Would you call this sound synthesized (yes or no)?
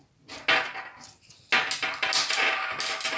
no